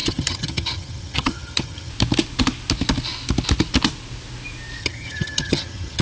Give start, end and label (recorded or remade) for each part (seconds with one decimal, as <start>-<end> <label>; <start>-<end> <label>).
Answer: 0.0-1.9 remade; 1.9-4.8 recorded; 4.8-6.0 remade